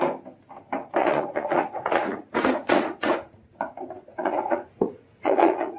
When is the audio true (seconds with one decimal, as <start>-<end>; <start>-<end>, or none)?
0.0-1.0; 3.8-4.2